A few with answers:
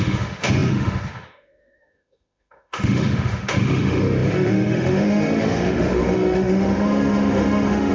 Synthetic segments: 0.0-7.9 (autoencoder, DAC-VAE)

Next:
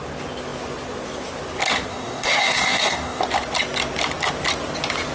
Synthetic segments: 1.9-3.2 (codec, DAC)

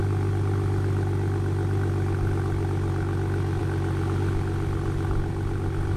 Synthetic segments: none